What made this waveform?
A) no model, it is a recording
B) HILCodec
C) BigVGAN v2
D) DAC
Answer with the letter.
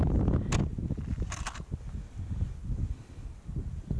A